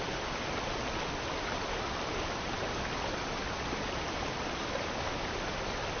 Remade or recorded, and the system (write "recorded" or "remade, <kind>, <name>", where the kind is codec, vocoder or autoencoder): recorded